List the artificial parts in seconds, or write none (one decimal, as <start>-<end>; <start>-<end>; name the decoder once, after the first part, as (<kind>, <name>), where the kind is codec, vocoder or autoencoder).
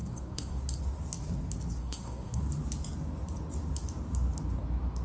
0.0-0.6 (codec, SNAC); 1.8-2.4